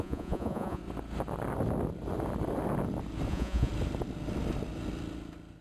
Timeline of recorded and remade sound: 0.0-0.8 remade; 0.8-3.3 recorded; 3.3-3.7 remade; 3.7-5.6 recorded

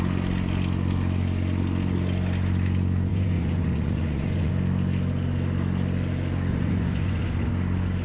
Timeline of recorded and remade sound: 0.0-3.1 recorded; 3.1-4.5 remade; 4.5-6.5 recorded; 6.5-7.5 remade; 7.5-8.0 recorded

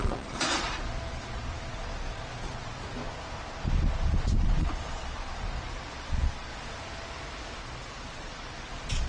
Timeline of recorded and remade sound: 0.0-3.0 remade; 3.0-4.4 recorded; 4.4-6.5 remade; 6.5-7.6 recorded; 7.6-9.1 remade

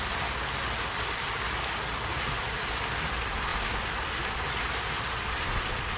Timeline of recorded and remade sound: 0.0-6.0 recorded

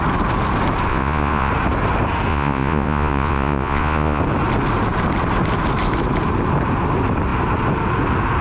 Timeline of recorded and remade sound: 0.0-0.9 recorded; 0.9-1.5 remade; 1.5-2.3 recorded; 2.3-4.2 remade; 4.2-8.4 recorded